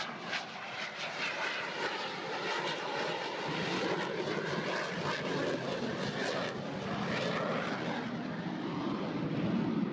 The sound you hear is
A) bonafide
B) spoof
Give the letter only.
A